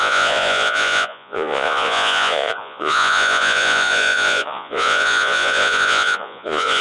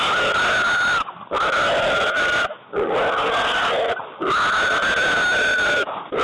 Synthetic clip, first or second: first